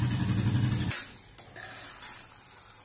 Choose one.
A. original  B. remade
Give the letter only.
A